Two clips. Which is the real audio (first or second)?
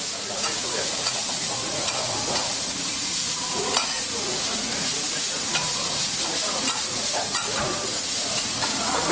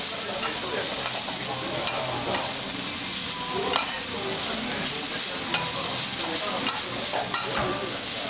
second